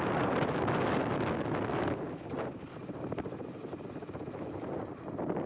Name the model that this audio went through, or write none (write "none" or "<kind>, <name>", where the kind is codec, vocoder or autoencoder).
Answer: none